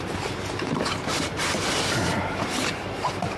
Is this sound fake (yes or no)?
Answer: yes